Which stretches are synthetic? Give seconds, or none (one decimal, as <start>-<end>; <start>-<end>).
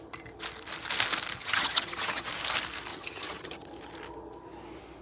1.4-2.3; 2.9-3.7